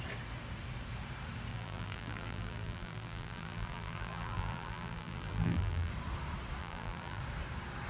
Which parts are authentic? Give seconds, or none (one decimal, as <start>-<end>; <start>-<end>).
0.0-1.5; 5.9-6.6; 7.2-7.9